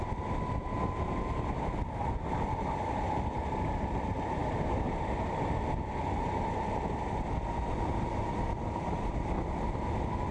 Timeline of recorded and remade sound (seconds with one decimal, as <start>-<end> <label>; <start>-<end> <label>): 0.0-10.3 recorded